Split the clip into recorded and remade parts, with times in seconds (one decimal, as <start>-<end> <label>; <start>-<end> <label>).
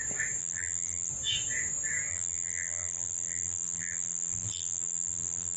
0.0-0.4 recorded; 0.4-1.1 remade; 1.1-2.1 recorded; 2.1-5.6 remade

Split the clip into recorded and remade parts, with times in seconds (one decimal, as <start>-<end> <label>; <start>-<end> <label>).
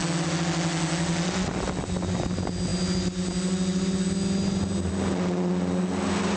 0.0-6.4 recorded